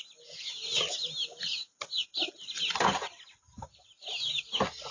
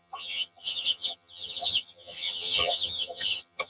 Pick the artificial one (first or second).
second